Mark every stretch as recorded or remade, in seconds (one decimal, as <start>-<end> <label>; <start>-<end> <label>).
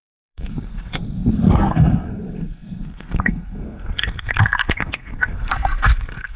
0.0-6.4 remade